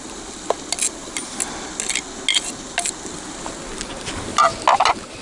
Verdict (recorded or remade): recorded